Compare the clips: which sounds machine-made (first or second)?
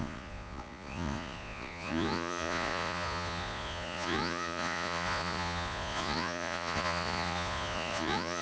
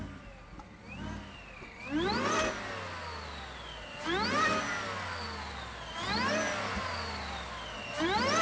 first